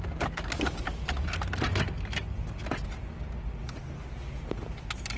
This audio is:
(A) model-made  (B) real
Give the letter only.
B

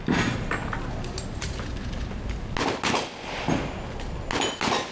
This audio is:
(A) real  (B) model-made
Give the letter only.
A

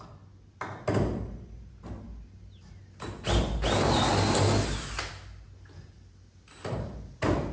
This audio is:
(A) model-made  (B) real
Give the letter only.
B